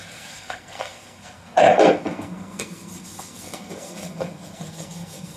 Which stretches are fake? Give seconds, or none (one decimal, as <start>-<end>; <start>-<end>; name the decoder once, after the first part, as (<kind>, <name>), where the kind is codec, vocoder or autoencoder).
0.0-5.4 (codec, SNAC)